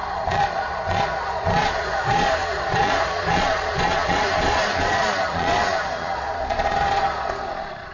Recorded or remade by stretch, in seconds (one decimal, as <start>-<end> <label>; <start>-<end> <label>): 0.0-7.9 remade